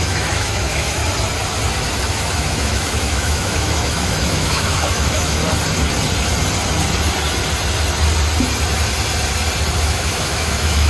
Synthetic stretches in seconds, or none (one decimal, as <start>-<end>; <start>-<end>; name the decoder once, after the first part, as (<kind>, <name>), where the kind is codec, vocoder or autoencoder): 0.0-1.0 (autoencoder, DAC-VAE); 2.1-5.4; 9.8-10.9